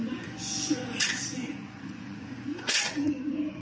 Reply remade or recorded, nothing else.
remade